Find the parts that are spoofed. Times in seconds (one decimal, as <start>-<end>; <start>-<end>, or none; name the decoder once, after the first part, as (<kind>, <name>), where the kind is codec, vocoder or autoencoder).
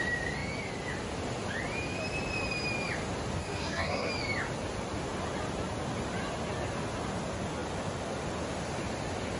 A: 3.4-4.1 (codec, SNAC)